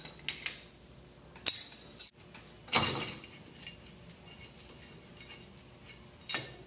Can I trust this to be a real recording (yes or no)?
yes